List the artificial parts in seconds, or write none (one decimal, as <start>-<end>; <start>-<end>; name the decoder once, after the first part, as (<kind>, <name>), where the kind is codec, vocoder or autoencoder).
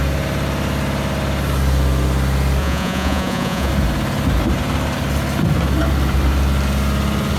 2.6-3.7 (vocoder, Vocos)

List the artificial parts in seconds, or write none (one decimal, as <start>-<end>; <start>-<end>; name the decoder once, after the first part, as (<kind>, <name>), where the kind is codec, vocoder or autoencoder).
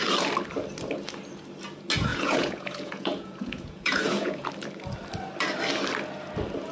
2.1-4.5 (vocoder, Vocos)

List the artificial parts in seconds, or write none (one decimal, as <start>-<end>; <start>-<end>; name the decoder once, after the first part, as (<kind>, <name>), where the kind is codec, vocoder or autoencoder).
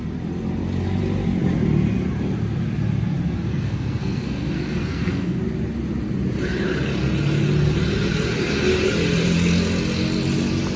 3.5-5.4 (codec, SNAC)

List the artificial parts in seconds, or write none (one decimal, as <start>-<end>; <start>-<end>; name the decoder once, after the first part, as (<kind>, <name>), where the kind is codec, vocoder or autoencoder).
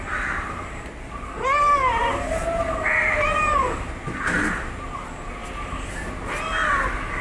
none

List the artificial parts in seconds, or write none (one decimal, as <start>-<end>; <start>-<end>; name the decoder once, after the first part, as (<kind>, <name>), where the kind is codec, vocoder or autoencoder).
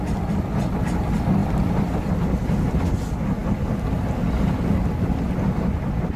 none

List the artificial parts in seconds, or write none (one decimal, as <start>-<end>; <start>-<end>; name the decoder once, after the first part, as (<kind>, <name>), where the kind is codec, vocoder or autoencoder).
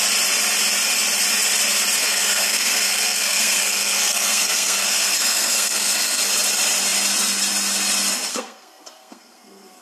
2.0-6.2 (codec, SNAC); 8.3-9.8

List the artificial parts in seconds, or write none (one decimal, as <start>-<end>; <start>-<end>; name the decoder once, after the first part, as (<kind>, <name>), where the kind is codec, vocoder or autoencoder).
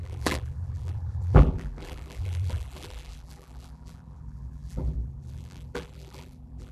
0.0-6.7 (vocoder, BigVGAN v2)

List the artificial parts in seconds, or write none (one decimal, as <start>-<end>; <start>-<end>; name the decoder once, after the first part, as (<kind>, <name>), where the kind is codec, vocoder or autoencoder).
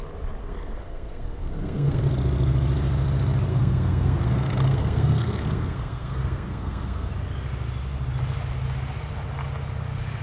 0.4-2.0 (codec, SNAC); 3.5-7.1